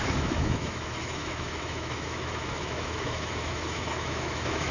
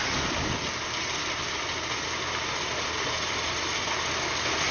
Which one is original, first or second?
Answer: second